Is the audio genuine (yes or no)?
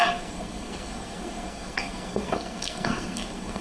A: no